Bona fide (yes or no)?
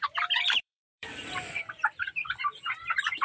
no